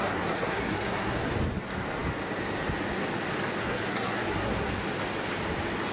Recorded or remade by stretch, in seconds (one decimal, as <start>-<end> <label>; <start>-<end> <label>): 0.0-1.3 remade; 1.3-3.6 recorded; 3.6-4.7 remade; 4.7-5.9 recorded